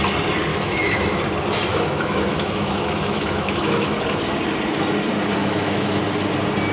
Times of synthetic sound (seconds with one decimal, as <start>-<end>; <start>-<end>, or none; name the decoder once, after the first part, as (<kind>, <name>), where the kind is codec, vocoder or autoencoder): 0.5-1.2 (autoencoder, DAC-VAE); 1.7-3.9; 5.4-6.0